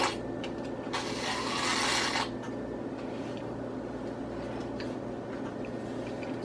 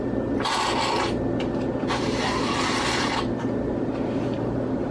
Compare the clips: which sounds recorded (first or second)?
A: first